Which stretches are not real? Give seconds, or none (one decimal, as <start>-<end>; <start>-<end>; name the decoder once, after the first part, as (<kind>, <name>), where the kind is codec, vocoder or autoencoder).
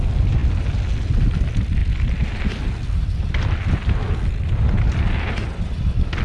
none